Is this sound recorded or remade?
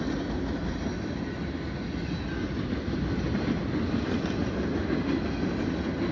recorded